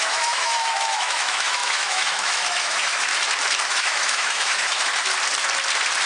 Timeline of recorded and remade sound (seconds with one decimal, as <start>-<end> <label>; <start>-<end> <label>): 0.0-3.1 remade; 3.1-3.7 recorded; 3.7-4.9 remade; 4.9-6.1 recorded